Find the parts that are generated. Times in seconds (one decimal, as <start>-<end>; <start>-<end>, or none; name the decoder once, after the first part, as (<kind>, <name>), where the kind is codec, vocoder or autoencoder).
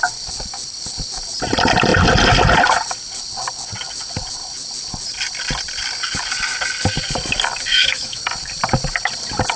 7.7-8.2 (autoencoder, DAC-VAE)